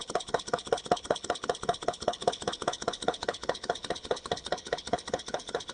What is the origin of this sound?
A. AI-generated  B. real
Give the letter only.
A